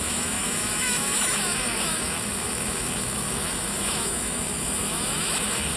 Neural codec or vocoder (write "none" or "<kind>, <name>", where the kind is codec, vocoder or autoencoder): autoencoder, DAC-VAE